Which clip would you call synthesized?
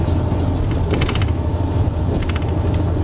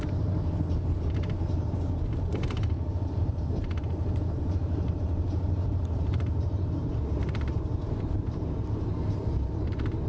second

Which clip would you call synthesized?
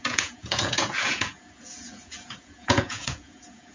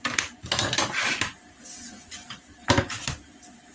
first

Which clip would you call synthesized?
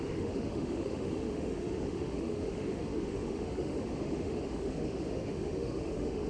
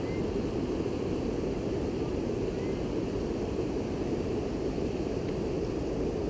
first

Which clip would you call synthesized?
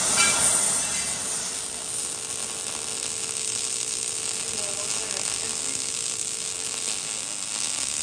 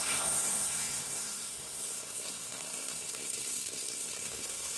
second